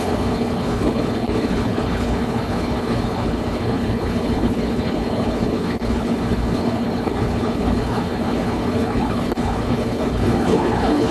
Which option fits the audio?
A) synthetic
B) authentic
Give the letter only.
A